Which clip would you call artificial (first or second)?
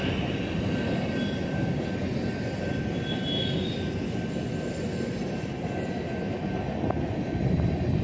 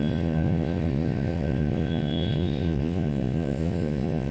second